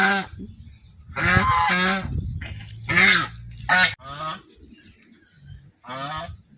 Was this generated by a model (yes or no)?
no